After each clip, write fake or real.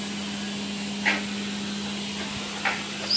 real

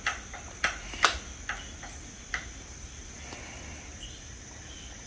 real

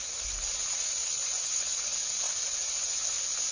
real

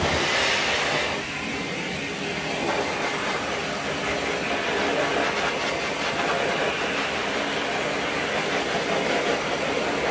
real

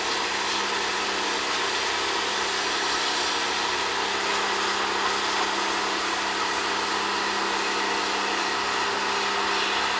real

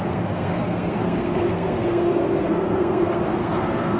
fake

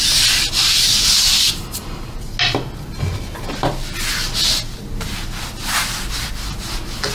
real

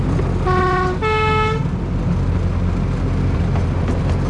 real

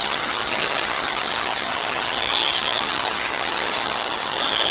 fake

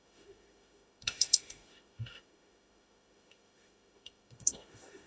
fake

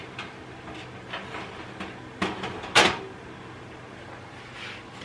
real